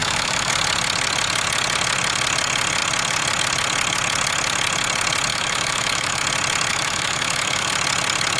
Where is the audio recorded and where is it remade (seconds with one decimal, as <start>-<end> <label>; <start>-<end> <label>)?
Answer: 0.0-0.5 remade; 0.5-5.3 recorded; 5.3-6.2 remade; 6.2-6.7 recorded; 6.7-7.7 remade; 7.7-8.4 recorded

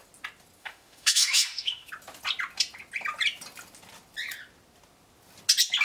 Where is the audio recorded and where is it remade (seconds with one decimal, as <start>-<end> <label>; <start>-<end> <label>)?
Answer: 0.0-0.6 recorded; 0.6-1.9 remade; 1.9-5.8 recorded

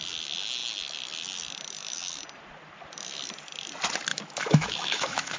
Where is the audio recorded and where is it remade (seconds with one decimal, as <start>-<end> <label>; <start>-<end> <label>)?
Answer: 0.0-4.1 recorded; 4.1-5.4 remade